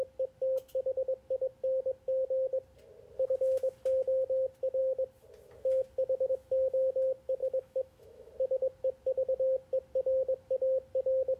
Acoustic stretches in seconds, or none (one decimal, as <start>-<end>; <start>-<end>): 0.0-7.4; 8.3-11.4